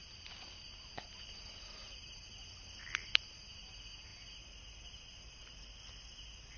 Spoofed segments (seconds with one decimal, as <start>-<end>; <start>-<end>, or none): none